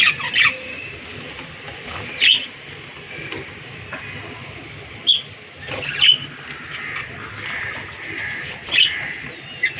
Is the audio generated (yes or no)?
no